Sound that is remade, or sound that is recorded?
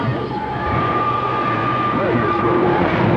remade